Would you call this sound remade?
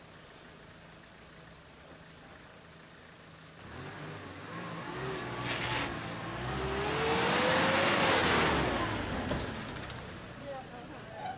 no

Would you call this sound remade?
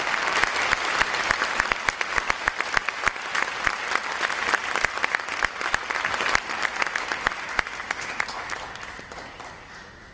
no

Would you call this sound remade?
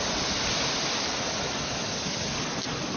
no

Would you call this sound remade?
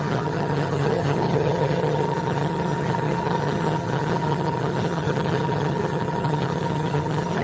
yes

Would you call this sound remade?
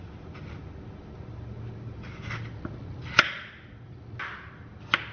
no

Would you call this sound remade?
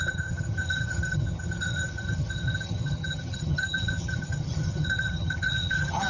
yes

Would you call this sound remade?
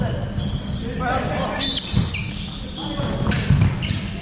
no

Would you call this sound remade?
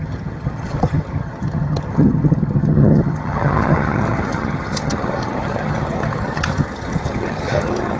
yes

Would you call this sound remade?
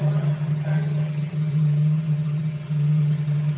yes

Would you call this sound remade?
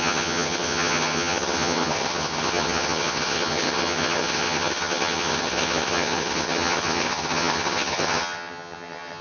yes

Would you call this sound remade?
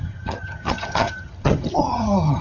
yes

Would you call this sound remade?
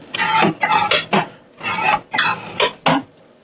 no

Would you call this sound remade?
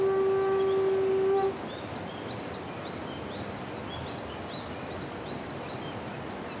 no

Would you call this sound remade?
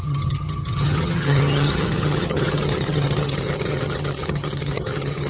yes